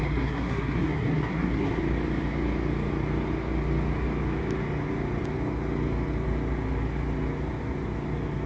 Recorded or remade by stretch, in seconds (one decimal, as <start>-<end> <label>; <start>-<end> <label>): 0.0-1.8 remade; 1.8-8.5 recorded